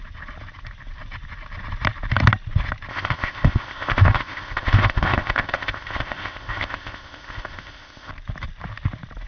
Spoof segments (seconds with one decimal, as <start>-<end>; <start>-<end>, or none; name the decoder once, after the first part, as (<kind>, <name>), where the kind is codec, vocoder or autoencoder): 2.9-8.1 (codec, ZipCodec)